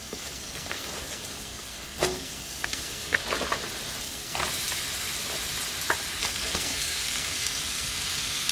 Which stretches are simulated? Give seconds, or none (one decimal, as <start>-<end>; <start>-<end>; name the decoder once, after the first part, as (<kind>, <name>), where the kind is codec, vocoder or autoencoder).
0.0-3.2 (codec, SNAC); 4.0-4.4; 6.2-8.5